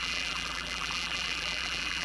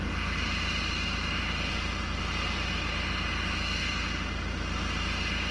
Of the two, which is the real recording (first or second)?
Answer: second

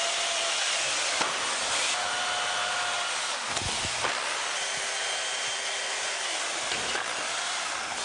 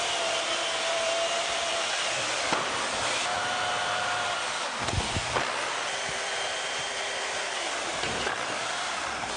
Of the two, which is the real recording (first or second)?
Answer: first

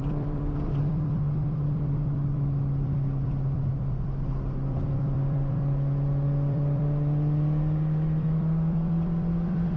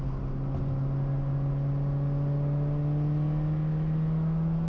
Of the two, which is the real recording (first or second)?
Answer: second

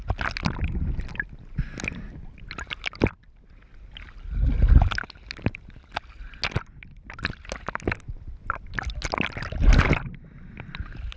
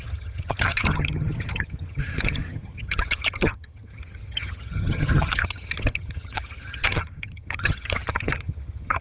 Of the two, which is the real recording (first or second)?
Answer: first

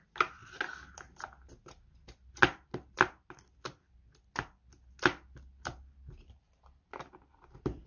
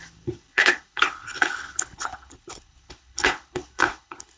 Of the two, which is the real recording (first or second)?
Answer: first